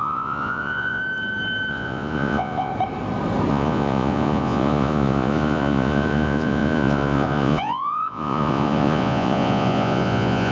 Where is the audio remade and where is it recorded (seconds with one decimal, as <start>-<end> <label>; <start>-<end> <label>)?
0.0-1.0 remade; 1.0-1.7 recorded; 1.7-2.7 remade; 2.7-3.5 recorded; 3.5-10.5 remade